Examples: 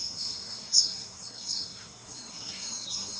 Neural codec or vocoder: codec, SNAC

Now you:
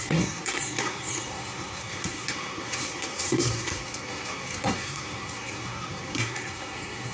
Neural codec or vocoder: codec, SNAC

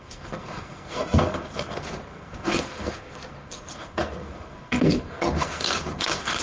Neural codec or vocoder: codec, SNAC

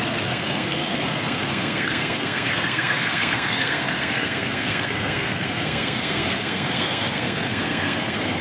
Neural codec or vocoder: codec, SNAC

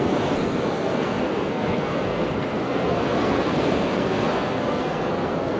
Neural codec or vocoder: codec, SNAC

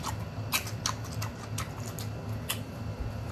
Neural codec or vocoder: none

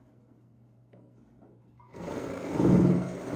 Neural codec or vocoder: codec, SNAC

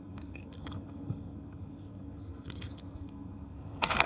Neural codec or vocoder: codec, SNAC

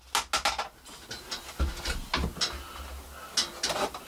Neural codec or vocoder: none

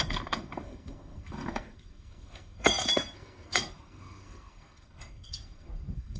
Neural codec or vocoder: codec, SNAC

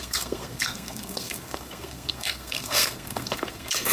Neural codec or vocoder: codec, SNAC